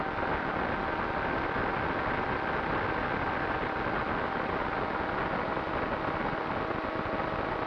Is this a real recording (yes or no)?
yes